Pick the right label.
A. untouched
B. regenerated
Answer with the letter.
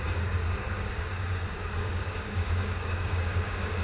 B